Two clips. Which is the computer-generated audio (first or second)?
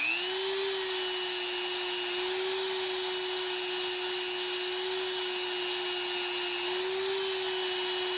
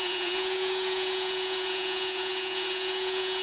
second